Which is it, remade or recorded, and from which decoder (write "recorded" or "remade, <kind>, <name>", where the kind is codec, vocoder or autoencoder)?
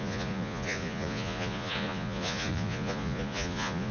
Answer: remade, vocoder, Vocos